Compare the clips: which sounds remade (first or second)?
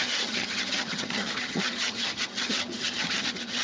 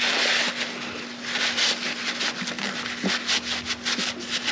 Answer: first